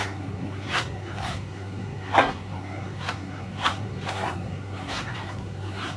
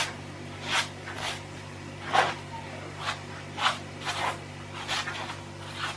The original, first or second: second